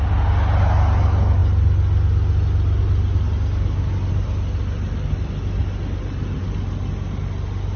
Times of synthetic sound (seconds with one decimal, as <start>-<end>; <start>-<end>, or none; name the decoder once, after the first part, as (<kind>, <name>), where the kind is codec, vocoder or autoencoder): none